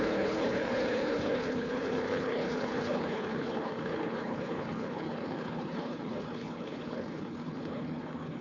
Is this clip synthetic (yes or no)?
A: yes